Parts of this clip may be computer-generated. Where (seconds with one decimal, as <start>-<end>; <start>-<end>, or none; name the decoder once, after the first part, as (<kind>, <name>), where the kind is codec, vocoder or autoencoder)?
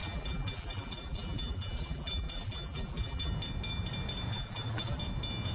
0.0-3.3 (vocoder, BigVGAN v2); 4.3-5.0